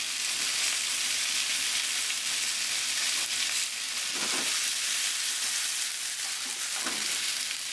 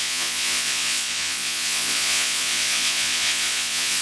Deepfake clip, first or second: second